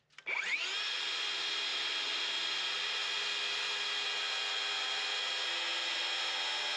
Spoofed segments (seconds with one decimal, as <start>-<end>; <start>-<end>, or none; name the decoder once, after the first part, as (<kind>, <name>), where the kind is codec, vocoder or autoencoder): none